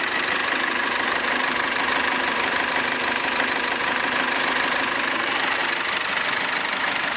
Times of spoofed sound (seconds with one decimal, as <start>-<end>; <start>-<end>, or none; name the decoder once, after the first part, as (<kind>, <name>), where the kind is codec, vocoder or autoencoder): 0.0-5.6 (vocoder, BigVGAN v2); 6.8-7.2